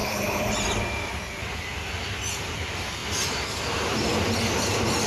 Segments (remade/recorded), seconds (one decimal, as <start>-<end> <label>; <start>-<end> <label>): 0.0-0.5 remade; 0.5-5.1 recorded